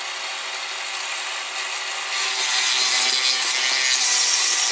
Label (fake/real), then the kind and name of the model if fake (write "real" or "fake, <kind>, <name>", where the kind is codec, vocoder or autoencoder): real